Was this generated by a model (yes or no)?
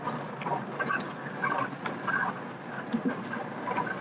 no